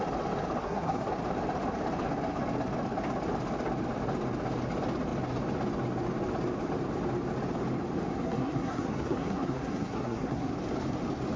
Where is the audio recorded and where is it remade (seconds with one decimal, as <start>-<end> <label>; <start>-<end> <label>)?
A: 0.0-0.6 recorded; 0.6-1.1 remade; 1.1-8.1 recorded; 8.1-10.5 remade; 10.5-11.4 recorded